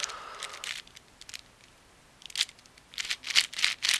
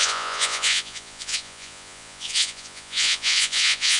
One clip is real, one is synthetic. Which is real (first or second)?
first